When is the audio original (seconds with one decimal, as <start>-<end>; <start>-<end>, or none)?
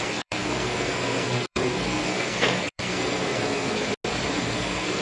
3.9-4.4